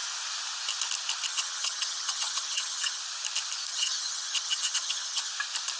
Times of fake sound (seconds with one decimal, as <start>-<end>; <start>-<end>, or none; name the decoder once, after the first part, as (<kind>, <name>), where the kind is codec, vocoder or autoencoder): 1.3-3.0 (vocoder, HiFi-GAN); 3.7-5.3